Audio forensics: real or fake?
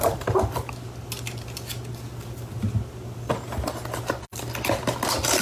real